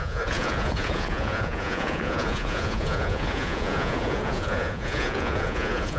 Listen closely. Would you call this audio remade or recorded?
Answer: remade